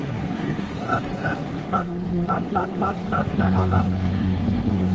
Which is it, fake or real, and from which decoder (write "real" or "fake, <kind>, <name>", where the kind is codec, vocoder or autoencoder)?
fake, codec, SNAC